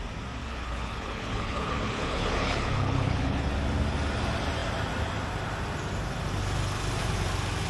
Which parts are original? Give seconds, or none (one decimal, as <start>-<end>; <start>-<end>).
0.0-0.4; 3.5-7.7